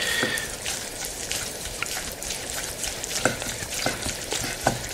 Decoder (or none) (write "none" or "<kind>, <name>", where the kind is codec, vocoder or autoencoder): vocoder, BigVGAN v2